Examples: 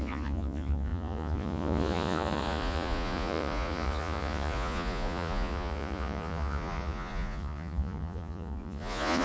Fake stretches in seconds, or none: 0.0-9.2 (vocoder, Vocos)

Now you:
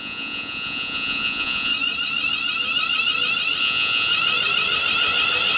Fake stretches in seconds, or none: 0.0-1.7 (vocoder, Vocos); 3.6-4.1

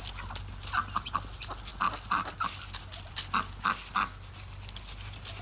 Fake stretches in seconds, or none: none

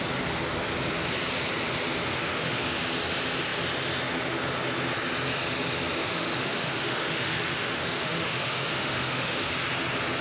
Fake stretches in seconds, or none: 2.1-2.8 (autoencoder, DAC-VAE); 6.0-9.5

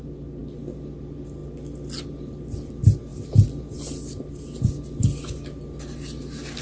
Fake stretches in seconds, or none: none

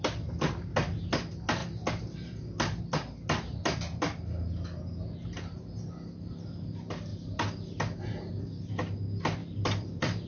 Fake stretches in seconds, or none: 1.6-2.8 (vocoder, BigVGAN v2); 9.4-10.3

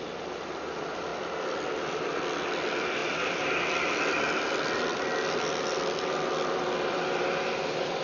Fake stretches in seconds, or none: 0.0-1.1 (vocoder, BigVGAN v2); 1.7-3.0; 3.7-8.0

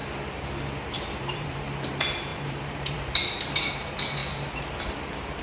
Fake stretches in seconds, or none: 0.9-4.2 (vocoder, BigVGAN v2)